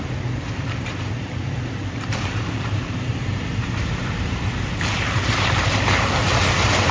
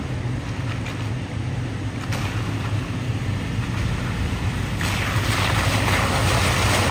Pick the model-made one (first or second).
first